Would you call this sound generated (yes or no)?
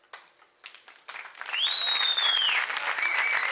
no